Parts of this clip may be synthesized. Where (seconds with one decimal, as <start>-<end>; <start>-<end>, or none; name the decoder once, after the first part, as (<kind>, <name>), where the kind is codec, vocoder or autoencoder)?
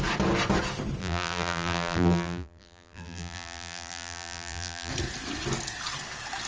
1.0-4.9 (vocoder, BigVGAN v2)